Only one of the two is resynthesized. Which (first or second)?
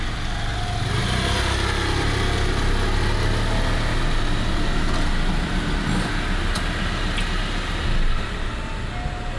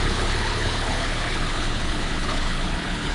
second